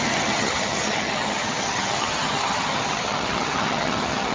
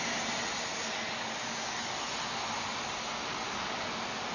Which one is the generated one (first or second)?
first